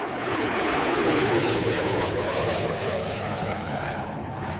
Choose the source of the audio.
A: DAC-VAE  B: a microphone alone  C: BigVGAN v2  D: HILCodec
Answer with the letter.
D